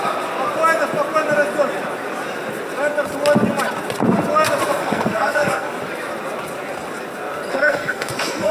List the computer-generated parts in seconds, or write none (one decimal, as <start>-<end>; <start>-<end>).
4.8-5.7; 7.5-8.5